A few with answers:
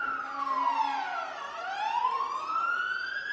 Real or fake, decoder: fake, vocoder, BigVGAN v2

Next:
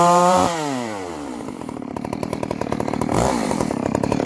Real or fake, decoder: fake, vocoder, BigVGAN v2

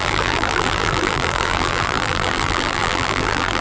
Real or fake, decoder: fake, vocoder, BigVGAN v2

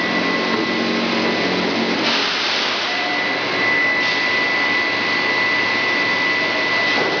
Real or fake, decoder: real